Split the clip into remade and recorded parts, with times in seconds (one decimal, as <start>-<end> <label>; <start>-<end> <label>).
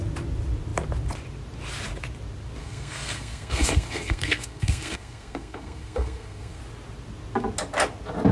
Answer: 0.0-2.6 recorded; 2.6-6.6 remade; 6.6-8.3 recorded